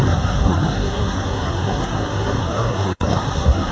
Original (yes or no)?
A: no